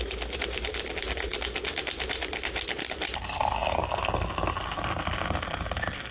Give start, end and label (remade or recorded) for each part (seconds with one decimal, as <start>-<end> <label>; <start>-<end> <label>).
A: 0.0-6.1 recorded